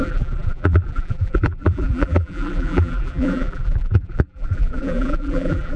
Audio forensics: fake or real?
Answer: fake